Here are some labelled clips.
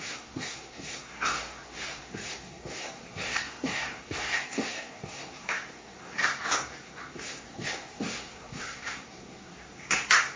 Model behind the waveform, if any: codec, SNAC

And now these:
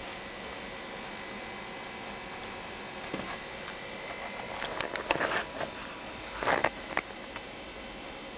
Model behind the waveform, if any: none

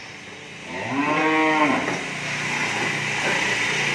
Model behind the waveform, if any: none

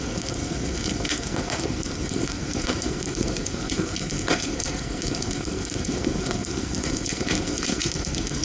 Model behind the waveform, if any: codec, SNAC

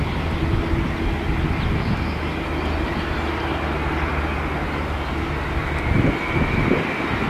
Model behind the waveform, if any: none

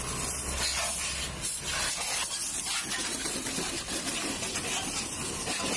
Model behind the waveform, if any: none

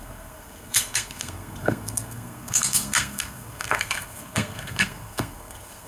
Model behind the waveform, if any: codec, SNAC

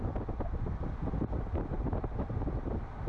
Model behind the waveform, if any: none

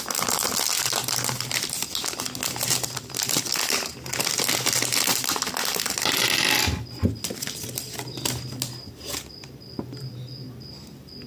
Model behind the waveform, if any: none